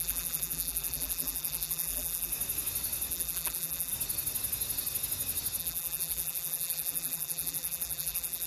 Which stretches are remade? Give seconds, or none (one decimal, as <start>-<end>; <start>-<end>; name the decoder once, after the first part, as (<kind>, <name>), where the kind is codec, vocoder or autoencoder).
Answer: 0.0-2.3 (vocoder, BigVGAN v2); 3.1-3.9; 5.6-8.5